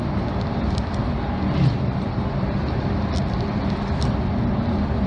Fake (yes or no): no